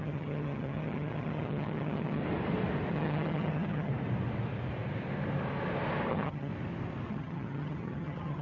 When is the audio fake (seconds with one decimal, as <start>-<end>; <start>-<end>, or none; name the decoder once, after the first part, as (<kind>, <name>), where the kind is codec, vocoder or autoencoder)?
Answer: 0.0-2.2 (vocoder, HiFi-GAN); 2.9-3.9; 6.1-6.5; 7.1-8.4